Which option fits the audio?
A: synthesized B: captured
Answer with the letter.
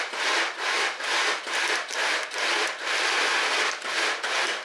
B